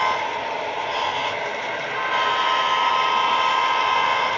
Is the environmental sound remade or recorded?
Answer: recorded